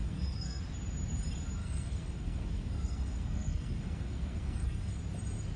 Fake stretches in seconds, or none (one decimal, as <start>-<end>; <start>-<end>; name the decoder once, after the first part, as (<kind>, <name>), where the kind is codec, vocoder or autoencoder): 0.0-0.6 (codec, SNAC); 1.6-5.0